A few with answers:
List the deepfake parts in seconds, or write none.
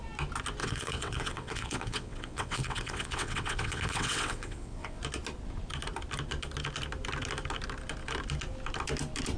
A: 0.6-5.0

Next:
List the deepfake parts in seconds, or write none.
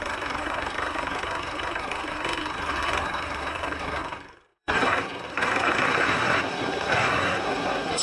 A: 0.0-8.0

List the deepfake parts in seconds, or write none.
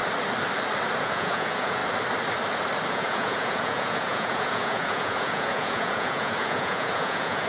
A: 1.0-1.8; 2.9-7.5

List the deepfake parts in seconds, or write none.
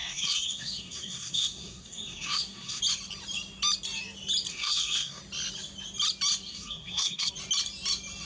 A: 0.0-2.8; 4.5-5.2; 6.5-7.3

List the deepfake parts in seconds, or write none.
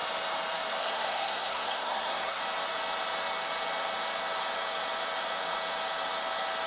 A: 0.8-2.4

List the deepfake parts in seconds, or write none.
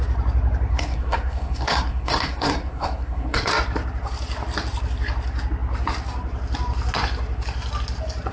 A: 0.7-3.5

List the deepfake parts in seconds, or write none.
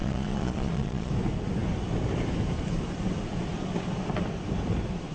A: 0.0-1.1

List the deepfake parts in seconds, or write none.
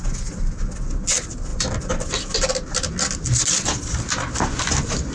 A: none